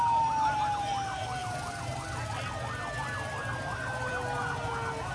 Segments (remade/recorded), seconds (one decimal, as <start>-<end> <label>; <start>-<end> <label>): 0.0-5.1 recorded